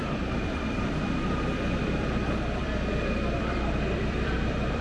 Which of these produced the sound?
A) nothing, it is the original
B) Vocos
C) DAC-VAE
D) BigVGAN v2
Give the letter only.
D